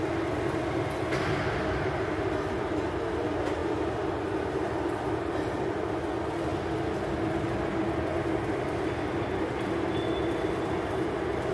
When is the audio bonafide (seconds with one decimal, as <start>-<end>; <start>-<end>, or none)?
0.0-11.5